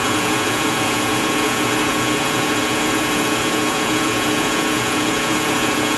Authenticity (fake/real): fake